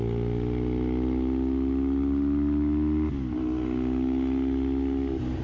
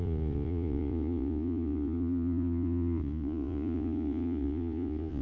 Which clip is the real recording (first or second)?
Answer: first